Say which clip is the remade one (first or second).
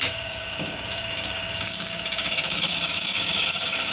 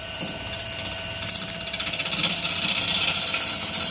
first